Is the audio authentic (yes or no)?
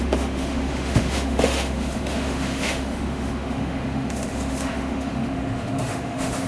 no